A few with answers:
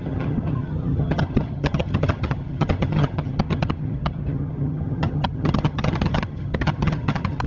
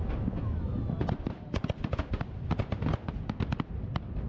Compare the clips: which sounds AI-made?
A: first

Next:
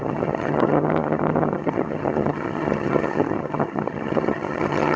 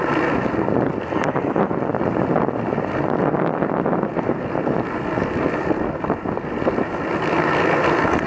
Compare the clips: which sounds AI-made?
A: first